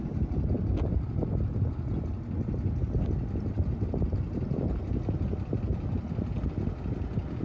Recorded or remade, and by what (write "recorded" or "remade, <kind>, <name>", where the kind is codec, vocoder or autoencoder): recorded